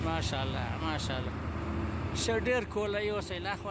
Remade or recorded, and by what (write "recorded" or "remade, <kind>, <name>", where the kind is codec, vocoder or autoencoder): recorded